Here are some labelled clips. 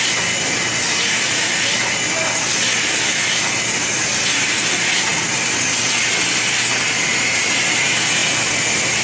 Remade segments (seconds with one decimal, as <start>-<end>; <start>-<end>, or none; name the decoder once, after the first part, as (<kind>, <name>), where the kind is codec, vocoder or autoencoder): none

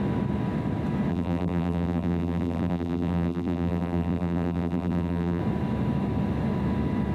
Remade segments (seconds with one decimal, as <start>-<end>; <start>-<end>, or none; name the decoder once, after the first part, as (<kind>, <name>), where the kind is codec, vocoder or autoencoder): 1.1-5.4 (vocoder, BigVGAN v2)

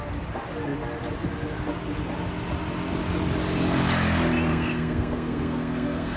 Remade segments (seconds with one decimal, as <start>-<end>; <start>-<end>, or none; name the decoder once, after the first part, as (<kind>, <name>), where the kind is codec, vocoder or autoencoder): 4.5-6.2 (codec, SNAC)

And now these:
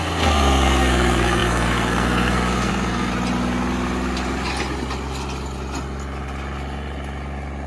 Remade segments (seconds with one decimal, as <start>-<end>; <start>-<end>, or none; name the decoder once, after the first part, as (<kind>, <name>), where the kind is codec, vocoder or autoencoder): 0.0-3.1 (codec, SNAC)

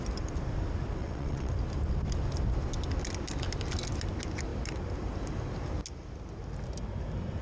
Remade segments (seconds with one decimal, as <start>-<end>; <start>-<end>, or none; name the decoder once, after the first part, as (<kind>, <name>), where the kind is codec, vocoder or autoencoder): 1.0-1.5 (vocoder, WaveNeXt)

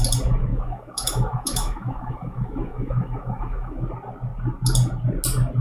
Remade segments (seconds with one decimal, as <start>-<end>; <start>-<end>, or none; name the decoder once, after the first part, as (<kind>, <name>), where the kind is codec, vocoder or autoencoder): 0.5-3.9 (autoencoder, DAC-VAE)